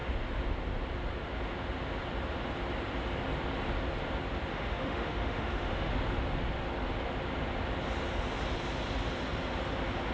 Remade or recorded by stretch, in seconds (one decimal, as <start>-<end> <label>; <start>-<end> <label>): 0.0-4.5 recorded; 4.5-5.9 remade; 5.9-10.1 recorded